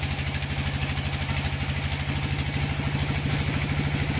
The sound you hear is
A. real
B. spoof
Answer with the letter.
A